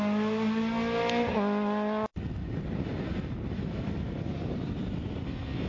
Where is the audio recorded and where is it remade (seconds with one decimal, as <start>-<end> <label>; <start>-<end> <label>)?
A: 0.0-5.7 recorded